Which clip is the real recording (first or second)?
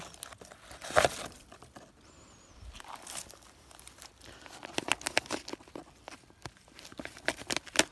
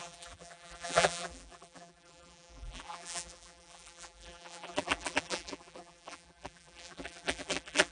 first